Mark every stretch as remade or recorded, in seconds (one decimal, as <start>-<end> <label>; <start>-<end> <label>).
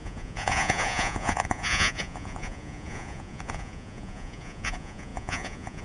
0.0-5.8 remade